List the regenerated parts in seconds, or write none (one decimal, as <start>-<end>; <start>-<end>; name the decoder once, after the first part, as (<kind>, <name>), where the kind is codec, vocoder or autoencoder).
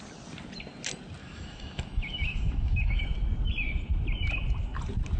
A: 1.2-3.0 (autoencoder, DAC-VAE)